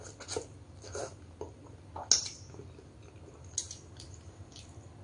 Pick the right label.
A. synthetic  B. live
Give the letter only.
B